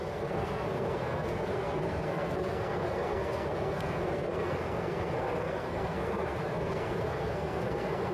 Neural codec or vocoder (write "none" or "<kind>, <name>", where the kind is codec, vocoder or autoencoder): codec, SNAC